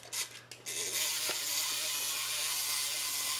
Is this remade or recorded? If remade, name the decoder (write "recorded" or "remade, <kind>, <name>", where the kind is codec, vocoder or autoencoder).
recorded